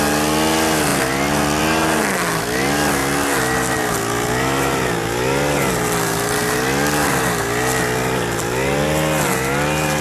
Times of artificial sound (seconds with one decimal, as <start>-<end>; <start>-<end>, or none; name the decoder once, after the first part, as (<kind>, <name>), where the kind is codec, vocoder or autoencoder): none

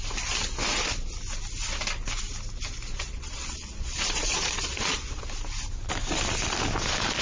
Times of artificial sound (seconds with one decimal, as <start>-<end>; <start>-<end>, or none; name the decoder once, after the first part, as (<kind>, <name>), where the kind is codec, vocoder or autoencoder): 2.9-5.2 (vocoder, Vocos)

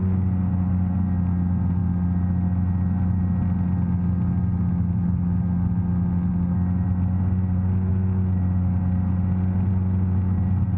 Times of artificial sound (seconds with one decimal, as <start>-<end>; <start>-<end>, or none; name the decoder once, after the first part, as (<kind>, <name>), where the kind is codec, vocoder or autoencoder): none

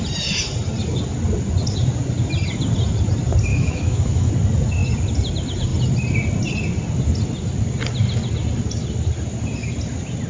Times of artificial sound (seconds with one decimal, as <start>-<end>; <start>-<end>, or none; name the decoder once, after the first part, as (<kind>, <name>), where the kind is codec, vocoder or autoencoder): 3.5-4.3 (autoencoder, DAC-VAE)

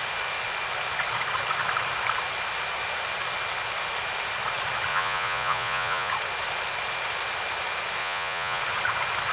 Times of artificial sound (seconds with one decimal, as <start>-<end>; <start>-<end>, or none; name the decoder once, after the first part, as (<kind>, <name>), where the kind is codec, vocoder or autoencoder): 4.9-6.1 (vocoder, Vocos); 8.0-8.6

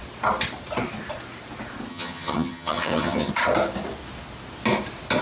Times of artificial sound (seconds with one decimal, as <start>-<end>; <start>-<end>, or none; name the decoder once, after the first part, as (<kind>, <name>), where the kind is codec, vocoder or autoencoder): 1.9-3.3 (vocoder, HiFi-GAN)

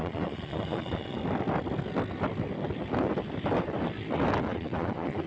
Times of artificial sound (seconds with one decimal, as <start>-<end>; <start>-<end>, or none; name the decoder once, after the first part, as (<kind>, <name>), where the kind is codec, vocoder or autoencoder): 0.0-1.2 (vocoder, Vocos); 4.4-5.3

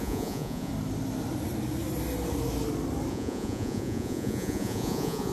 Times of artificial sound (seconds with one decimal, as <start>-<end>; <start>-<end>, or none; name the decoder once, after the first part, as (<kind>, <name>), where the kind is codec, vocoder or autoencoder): 0.0-0.7 (vocoder, Vocos); 3.1-5.3